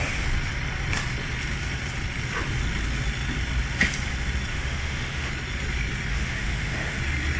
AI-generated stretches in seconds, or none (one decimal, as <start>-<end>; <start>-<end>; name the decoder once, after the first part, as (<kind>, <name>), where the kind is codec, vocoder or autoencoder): 4.5-5.3 (autoencoder, DAC-VAE); 6.1-7.0

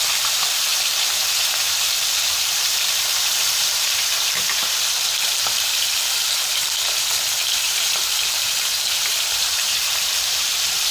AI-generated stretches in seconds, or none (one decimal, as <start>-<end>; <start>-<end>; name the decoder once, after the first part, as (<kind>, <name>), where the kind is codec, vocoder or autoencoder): 0.0-10.9 (vocoder, BigVGAN v2)

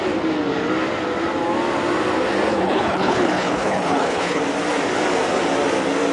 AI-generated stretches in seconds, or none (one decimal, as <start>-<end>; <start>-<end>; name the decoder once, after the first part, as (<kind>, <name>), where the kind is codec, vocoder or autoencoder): 2.5-4.4 (codec, HILCodec)

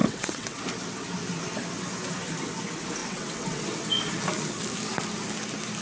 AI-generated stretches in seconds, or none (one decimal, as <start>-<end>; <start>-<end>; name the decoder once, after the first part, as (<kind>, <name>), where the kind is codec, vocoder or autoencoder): 0.0-0.6 (vocoder, WaveNeXt); 3.0-3.6

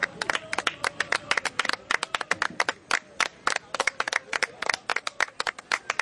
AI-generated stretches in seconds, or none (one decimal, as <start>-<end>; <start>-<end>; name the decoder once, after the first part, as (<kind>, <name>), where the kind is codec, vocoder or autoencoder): none